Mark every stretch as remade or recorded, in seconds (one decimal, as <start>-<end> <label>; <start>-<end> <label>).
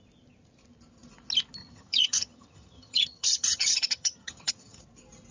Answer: 0.0-1.6 recorded; 1.6-4.8 remade; 4.8-5.3 recorded